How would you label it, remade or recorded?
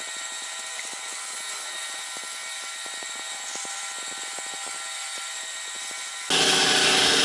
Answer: recorded